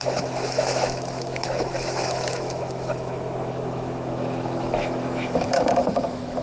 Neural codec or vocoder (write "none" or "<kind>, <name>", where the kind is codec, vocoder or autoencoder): autoencoder, DAC-VAE